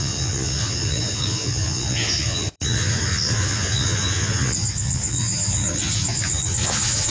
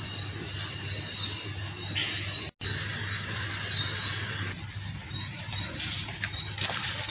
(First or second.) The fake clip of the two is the first